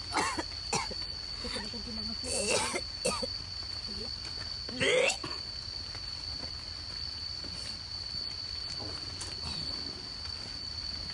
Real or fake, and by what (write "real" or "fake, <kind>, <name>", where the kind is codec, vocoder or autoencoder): real